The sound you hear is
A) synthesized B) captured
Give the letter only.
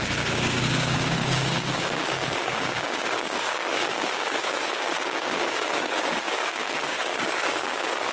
A